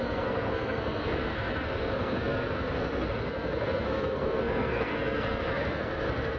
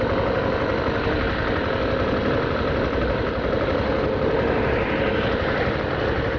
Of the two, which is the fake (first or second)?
first